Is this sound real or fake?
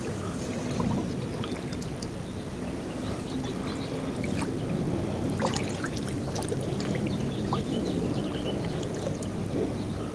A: real